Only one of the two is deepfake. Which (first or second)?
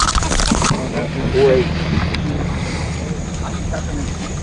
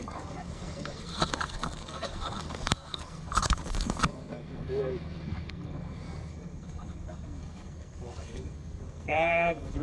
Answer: second